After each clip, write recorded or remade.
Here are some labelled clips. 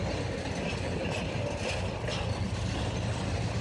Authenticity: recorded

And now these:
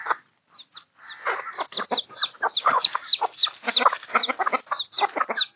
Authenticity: recorded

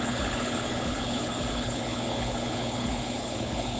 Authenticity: remade